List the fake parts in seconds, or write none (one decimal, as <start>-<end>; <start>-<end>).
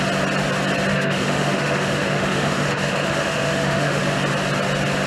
0.9-4.0